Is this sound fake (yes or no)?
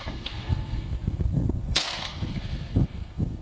yes